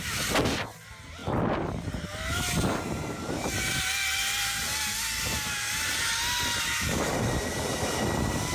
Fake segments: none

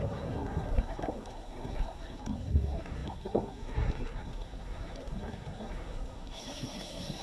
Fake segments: 0.0-7.2 (codec, SNAC)

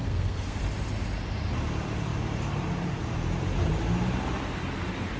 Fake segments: 0.0-0.6 (codec, SNAC)

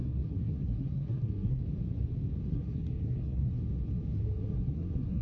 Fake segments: 0.0-1.6 (codec, SNAC); 2.5-3.6; 4.1-5.2

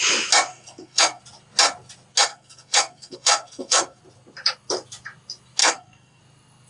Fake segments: 0.5-1.2 (codec, SNAC); 2.3-4.0; 5.6-6.2

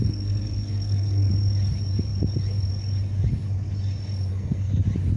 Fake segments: 0.0-1.3 (codec, SNAC); 4.3-4.8

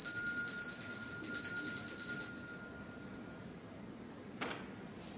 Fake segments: none